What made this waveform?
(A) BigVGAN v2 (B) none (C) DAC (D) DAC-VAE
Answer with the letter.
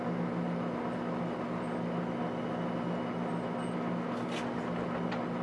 B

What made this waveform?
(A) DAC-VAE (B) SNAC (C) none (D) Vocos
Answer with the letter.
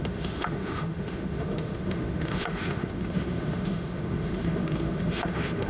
A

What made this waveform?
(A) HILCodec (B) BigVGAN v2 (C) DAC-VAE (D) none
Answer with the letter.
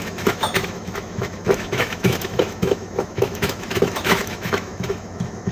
C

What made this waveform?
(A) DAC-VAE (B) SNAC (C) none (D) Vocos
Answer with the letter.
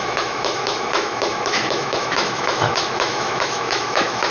A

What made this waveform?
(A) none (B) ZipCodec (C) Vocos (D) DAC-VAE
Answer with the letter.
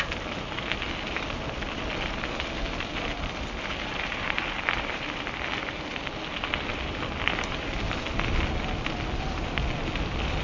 A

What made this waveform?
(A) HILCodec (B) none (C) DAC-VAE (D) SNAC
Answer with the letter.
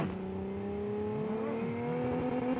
B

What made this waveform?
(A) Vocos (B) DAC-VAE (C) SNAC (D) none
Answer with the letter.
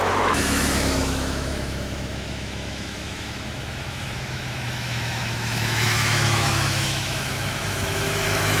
B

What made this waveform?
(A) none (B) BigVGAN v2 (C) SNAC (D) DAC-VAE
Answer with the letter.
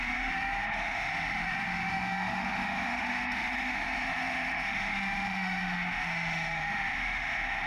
D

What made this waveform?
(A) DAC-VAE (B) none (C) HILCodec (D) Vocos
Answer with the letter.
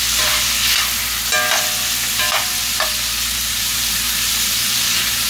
B